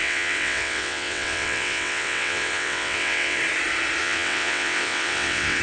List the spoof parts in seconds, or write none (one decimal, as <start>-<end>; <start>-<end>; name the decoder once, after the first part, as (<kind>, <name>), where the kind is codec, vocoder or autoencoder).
0.0-3.4 (vocoder, WaveNeXt); 4.0-5.6

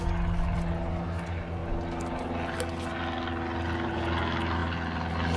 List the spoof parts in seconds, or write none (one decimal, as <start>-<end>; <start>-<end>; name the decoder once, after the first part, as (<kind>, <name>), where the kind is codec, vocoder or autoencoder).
none

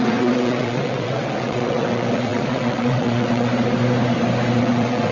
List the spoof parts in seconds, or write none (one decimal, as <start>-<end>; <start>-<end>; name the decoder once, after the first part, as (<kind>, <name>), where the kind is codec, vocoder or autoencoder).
0.0-3.5 (vocoder, WaveNeXt); 4.6-5.1

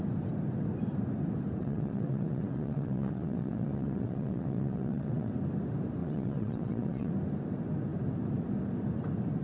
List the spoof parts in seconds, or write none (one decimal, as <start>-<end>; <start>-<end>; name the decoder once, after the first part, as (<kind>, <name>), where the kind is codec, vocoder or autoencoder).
1.6-5.3 (vocoder, WaveNeXt); 6.0-7.1

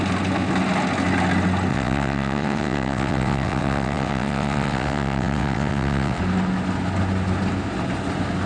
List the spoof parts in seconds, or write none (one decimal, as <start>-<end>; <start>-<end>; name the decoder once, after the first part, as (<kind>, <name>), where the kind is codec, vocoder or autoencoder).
1.7-6.2 (vocoder, WaveNeXt)

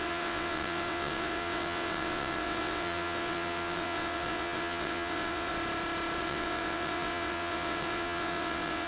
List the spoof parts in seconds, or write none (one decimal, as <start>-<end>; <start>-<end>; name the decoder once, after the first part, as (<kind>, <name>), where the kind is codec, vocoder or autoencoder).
0.0-5.5 (vocoder, WaveNeXt); 6.2-8.9

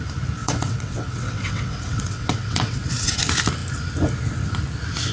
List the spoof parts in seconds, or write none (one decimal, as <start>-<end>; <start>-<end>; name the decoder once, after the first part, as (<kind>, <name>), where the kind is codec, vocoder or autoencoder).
0.4-3.2 (vocoder, WaveNeXt)